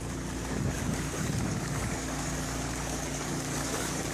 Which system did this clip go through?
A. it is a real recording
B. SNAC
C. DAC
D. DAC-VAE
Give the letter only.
C